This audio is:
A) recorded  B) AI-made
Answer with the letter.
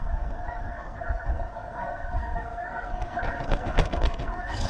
B